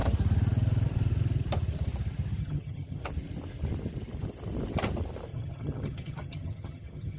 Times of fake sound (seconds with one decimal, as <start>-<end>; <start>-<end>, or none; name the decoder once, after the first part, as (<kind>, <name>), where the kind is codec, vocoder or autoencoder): 2.4-3.0 (vocoder, HiFi-GAN); 5.3-7.2